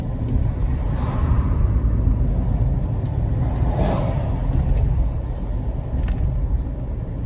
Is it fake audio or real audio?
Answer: real